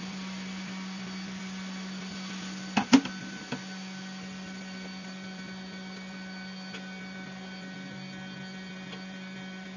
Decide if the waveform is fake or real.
real